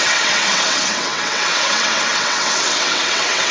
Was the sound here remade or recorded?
remade